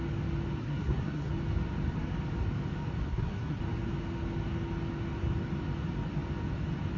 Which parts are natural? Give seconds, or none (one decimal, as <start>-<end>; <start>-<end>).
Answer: 0.0-0.6; 1.3-3.1; 3.6-7.0